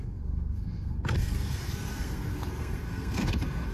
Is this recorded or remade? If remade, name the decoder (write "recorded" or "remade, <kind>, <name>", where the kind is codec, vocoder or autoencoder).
remade, codec, SNAC